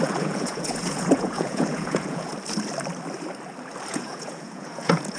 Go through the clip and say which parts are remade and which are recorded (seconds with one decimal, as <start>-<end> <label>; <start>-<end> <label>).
0.0-2.3 remade; 2.3-3.9 recorded; 3.9-5.2 remade